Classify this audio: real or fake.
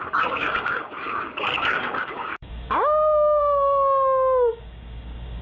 fake